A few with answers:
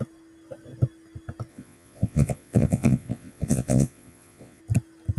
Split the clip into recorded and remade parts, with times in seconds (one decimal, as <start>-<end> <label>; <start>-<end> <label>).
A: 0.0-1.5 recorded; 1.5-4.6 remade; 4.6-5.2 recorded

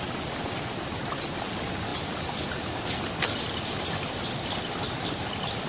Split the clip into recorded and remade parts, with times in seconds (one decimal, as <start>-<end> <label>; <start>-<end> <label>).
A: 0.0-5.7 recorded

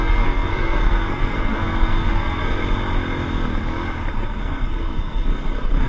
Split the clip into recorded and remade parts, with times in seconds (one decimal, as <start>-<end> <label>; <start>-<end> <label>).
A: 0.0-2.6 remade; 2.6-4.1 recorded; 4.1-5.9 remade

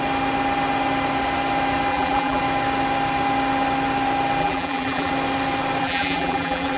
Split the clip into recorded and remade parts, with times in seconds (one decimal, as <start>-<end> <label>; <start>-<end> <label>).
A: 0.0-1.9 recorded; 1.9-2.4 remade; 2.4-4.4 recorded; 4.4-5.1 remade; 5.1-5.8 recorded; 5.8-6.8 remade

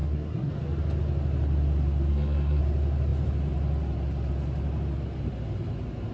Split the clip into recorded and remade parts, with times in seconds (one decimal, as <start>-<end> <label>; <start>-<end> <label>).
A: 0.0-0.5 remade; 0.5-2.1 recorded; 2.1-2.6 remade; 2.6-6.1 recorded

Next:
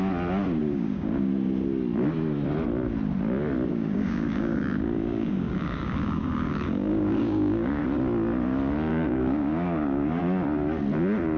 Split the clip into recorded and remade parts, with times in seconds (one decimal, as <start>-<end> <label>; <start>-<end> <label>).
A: 0.0-0.6 recorded; 0.6-1.3 remade; 1.3-3.7 recorded; 3.7-7.8 remade; 7.8-8.9 recorded; 8.9-10.2 remade; 10.2-11.4 recorded